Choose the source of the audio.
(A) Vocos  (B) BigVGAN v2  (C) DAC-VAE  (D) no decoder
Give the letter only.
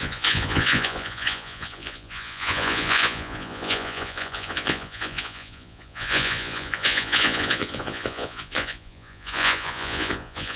A